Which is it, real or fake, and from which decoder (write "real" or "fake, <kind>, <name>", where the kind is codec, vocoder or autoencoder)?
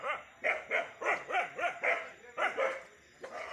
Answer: real